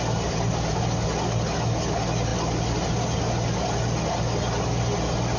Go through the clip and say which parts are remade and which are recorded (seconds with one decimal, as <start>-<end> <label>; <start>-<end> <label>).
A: 0.0-5.4 recorded